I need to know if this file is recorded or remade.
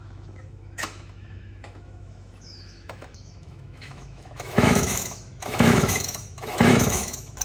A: remade